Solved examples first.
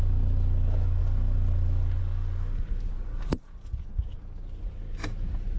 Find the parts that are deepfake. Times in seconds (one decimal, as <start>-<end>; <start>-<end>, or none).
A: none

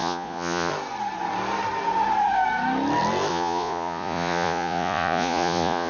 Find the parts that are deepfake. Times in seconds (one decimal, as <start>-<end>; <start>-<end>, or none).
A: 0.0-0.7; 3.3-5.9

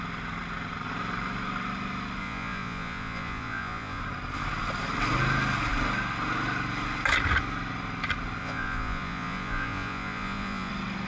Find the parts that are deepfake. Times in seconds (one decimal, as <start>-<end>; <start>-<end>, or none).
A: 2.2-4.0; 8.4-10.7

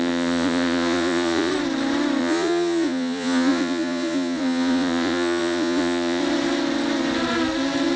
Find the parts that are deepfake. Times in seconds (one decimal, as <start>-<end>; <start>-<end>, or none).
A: 0.0-1.5; 2.2-6.2

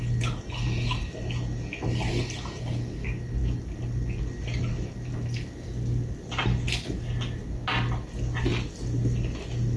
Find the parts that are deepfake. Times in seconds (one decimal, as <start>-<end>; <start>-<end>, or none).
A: none

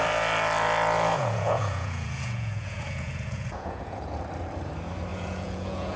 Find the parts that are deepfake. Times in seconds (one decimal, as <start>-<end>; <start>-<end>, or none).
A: 1.1-4.2; 5.1-6.0

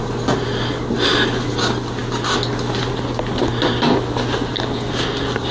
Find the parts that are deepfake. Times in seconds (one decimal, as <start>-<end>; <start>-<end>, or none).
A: none